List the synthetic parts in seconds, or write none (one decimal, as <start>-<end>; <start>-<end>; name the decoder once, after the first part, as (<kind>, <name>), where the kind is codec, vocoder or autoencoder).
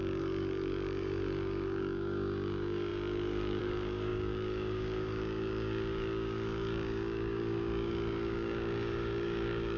0.0-9.8 (codec, DAC)